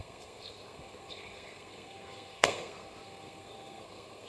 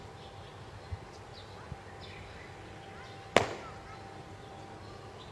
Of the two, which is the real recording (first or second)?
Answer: second